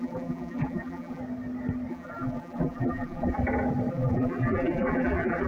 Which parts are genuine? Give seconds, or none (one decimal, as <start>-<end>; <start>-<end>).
1.2-1.9; 3.4-3.9